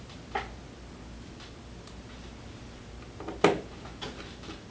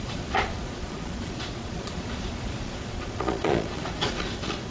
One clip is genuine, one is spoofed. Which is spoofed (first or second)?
second